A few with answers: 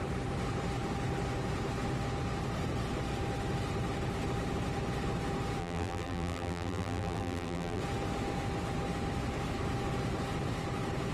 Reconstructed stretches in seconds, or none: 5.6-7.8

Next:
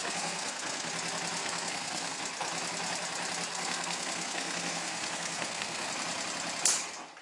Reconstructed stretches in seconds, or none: 0.0-0.9; 1.4-2.2; 3.5-5.9

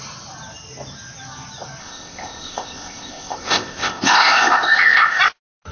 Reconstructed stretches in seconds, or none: 1.8-5.2

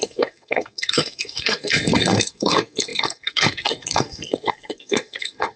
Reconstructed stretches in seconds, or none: 0.0-5.6

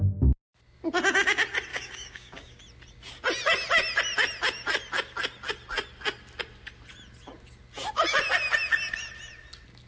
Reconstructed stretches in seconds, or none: 1.7-2.6

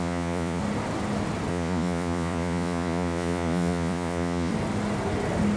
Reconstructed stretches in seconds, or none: 0.0-0.6; 1.5-4.5

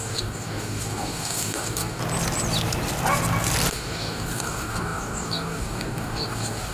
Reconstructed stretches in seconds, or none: 0.0-2.0; 3.7-6.7

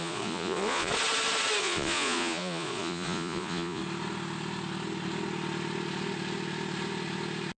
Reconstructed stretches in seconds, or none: 0.0-0.9; 1.6-3.8